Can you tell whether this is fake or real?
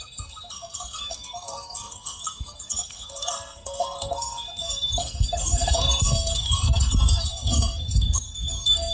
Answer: fake